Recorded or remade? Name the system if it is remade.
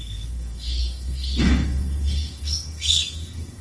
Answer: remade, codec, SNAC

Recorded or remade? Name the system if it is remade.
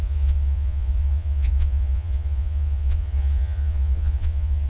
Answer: remade, vocoder, Vocos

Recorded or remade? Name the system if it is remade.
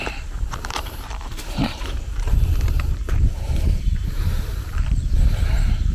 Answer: remade, vocoder, BigVGAN v2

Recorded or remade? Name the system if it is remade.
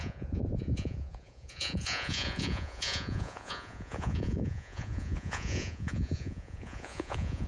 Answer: remade, vocoder, Vocos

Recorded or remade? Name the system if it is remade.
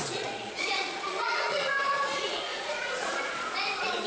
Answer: remade, vocoder, Vocos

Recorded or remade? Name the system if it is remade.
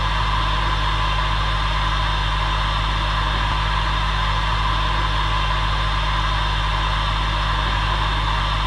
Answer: recorded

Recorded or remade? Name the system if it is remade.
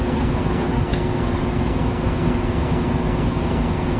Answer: remade, codec, SNAC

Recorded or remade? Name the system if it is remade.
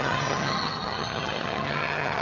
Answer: remade, vocoder, HiFi-GAN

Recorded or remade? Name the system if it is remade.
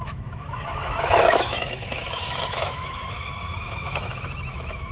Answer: remade, autoencoder, DAC-VAE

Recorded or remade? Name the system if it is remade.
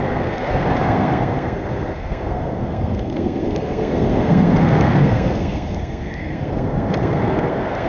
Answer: remade, codec, SNAC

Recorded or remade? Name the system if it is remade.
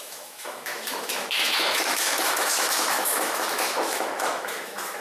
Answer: remade, autoencoder, DAC-VAE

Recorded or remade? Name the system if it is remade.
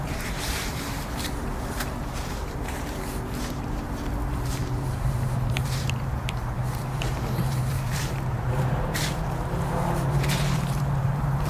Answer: remade, vocoder, BigVGAN v2